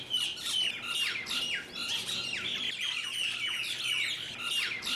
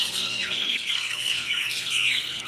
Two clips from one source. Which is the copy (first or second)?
second